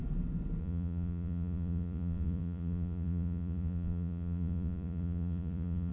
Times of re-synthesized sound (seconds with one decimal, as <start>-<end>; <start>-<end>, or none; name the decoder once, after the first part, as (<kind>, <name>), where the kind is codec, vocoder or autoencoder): 0.6-5.9 (vocoder, Vocos)